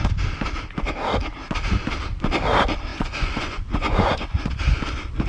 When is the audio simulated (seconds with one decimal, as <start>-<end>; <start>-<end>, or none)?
2.9-4.4